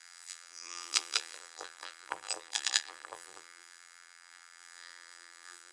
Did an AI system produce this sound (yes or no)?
yes